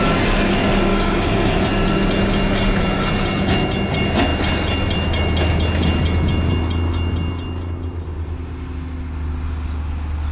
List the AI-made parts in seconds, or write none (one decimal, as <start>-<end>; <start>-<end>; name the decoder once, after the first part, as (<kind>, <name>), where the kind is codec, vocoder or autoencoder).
0.9-1.6 (codec, DAC)